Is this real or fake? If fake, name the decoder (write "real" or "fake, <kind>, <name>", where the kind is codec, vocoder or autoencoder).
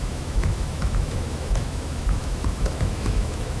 fake, autoencoder, DAC-VAE